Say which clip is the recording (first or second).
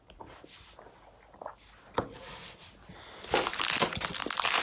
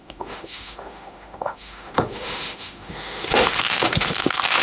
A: first